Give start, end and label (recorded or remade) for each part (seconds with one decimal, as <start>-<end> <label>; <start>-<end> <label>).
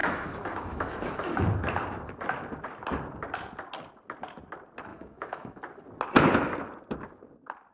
0.0-1.3 remade; 1.3-4.9 recorded; 4.9-5.6 remade; 5.6-7.7 recorded